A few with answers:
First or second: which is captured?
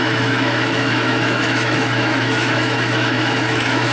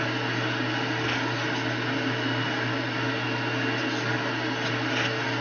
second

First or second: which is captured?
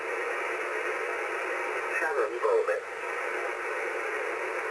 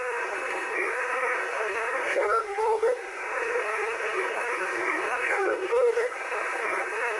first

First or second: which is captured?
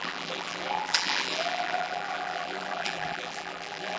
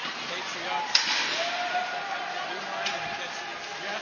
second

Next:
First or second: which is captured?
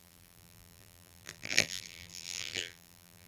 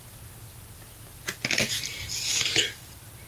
second